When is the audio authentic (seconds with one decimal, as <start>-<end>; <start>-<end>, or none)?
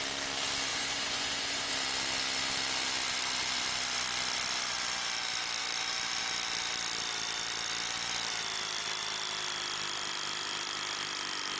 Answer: 0.0-0.7; 1.7-11.6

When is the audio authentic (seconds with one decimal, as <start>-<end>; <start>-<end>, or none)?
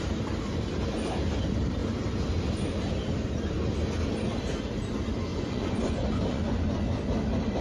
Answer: 0.0-5.3; 6.8-7.6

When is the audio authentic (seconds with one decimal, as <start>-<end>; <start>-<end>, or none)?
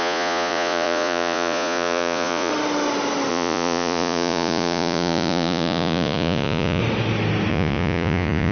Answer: 2.5-3.3; 6.8-7.5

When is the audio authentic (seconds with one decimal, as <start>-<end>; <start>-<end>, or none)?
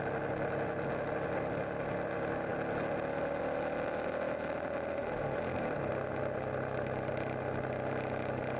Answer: 0.0-8.6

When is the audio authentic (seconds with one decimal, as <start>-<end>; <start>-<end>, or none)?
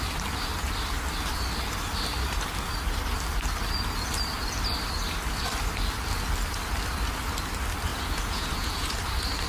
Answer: 0.0-7.9; 8.9-9.5